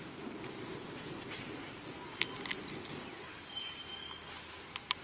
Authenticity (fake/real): real